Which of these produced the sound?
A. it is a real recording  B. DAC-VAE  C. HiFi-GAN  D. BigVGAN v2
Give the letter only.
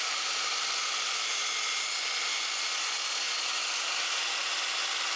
A